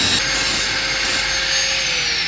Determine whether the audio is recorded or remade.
recorded